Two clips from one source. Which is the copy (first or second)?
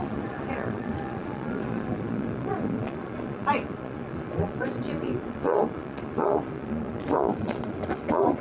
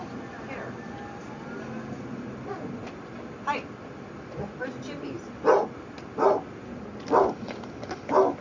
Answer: first